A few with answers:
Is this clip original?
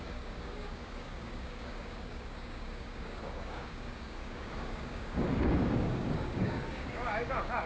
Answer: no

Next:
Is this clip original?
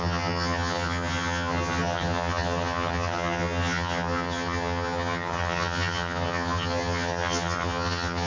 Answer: no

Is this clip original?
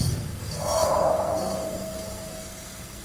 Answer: no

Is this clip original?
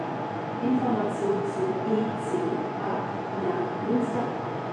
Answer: no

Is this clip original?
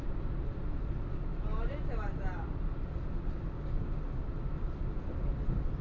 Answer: yes